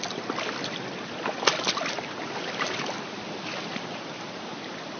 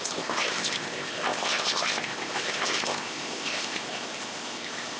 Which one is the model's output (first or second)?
second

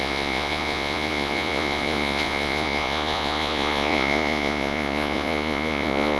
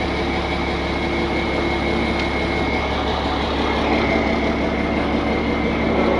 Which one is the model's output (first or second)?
first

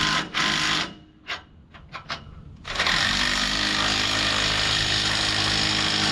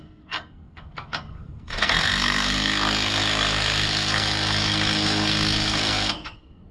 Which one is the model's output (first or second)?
second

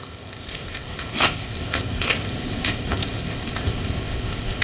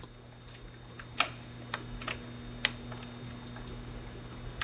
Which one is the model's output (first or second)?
first